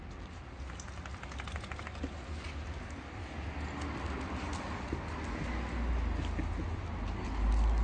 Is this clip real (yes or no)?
yes